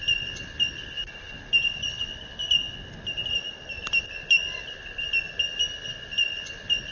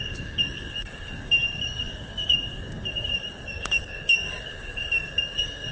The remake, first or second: second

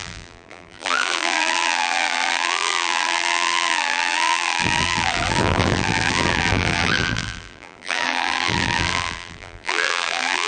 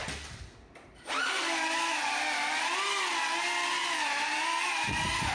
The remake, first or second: first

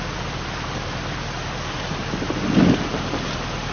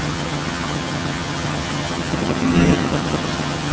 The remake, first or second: second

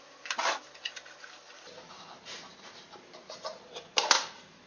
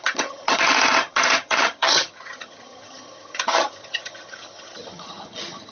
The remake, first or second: second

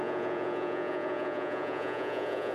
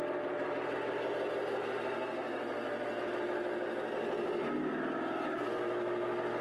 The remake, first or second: first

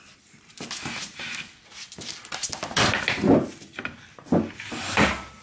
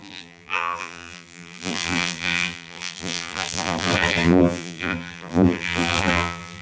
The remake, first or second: second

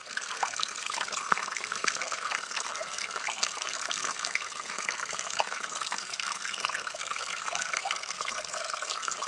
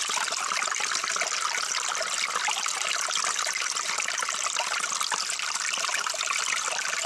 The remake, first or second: first